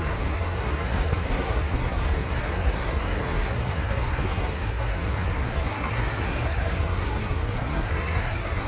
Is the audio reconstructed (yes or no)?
yes